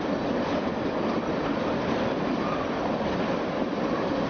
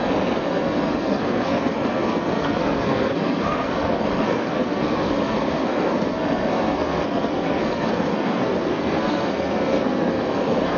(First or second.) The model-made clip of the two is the second